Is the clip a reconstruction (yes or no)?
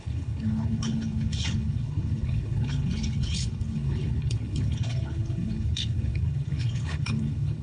yes